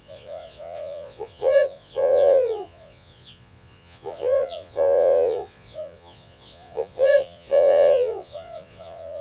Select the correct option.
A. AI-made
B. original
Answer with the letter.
A